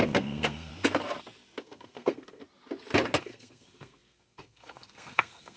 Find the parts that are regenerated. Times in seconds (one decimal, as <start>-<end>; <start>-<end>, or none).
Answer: 0.0-0.7; 1.6-2.4; 3.2-5.6